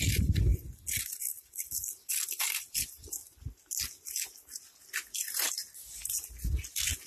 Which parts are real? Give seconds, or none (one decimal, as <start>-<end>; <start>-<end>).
0.0-7.1